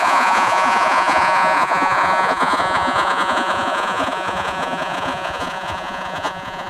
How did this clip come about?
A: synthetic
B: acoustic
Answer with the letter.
A